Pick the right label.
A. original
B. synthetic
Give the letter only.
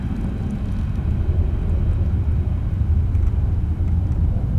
A